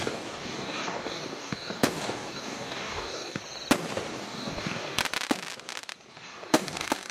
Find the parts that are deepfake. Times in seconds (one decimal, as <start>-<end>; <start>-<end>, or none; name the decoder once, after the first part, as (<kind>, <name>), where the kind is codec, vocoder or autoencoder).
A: 0.0-3.4 (codec, DAC); 4.1-5.0; 6.1-7.1